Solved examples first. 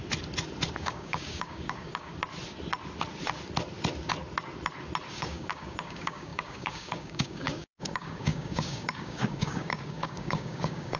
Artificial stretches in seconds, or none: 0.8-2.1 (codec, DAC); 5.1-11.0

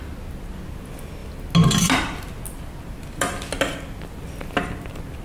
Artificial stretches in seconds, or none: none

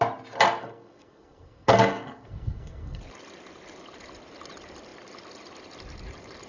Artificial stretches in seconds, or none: 0.6-3.0 (codec, SNAC)